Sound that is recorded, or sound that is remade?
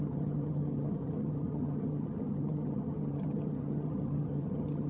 remade